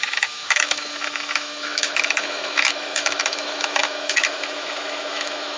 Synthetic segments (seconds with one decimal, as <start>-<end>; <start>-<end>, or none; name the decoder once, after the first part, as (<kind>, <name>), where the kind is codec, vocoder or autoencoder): 0.0-5.6 (autoencoder, DAC-VAE)